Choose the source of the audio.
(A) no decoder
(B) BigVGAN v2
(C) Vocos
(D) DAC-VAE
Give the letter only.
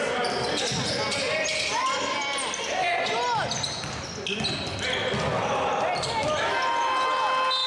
A